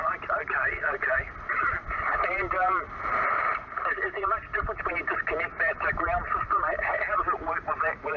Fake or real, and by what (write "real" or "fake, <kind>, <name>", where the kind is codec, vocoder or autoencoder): real